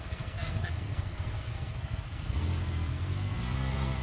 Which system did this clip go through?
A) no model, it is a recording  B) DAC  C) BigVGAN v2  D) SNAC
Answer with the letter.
D